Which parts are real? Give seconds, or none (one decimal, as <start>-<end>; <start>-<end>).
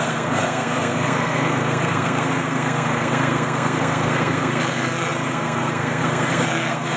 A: none